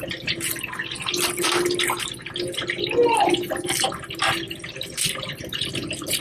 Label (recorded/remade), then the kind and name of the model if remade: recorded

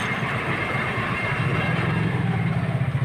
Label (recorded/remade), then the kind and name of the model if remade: recorded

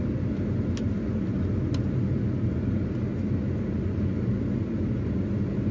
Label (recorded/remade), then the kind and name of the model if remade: recorded